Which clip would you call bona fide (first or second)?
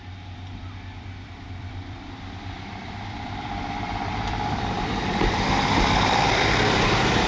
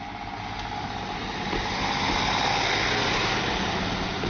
second